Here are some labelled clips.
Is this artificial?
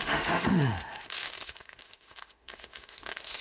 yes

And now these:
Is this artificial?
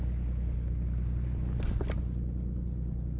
no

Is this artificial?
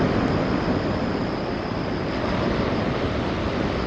no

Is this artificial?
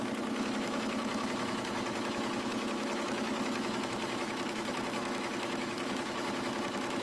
yes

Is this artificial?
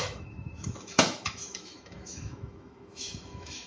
yes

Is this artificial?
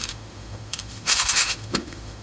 yes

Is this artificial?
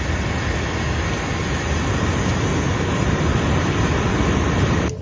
no